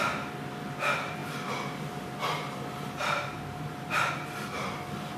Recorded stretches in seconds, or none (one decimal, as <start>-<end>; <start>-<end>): 0.0-5.2